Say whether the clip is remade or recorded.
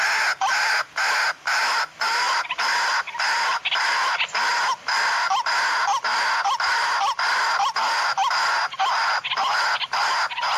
recorded